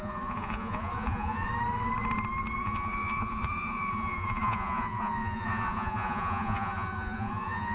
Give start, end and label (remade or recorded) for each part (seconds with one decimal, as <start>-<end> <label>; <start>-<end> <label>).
0.0-1.5 remade; 1.5-2.6 recorded; 2.6-7.7 remade